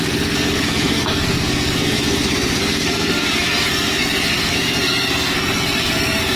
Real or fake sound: fake